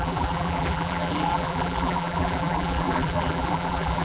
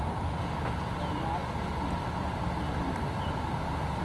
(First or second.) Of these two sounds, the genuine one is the second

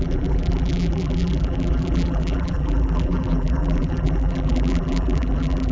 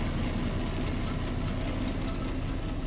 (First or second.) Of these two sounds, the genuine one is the second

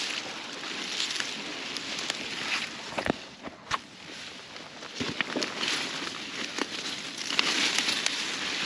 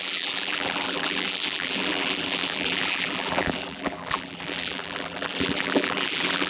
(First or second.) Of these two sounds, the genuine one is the first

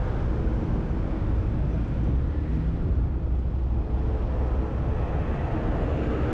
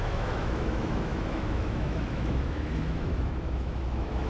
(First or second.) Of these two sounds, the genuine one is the first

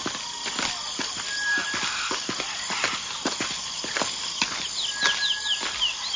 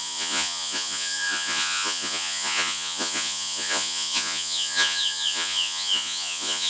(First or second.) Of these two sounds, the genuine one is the first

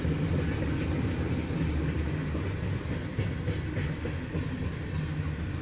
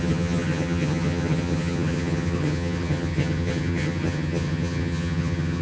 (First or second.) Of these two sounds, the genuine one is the first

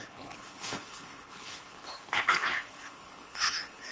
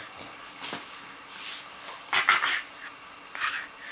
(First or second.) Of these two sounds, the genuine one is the second